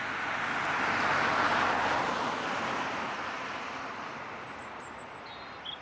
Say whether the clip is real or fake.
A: real